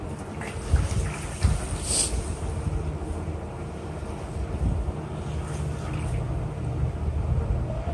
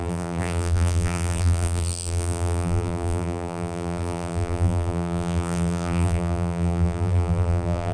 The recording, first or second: first